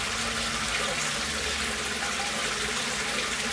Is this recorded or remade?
remade